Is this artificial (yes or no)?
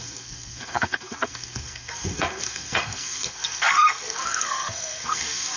yes